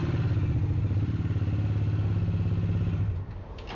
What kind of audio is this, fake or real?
real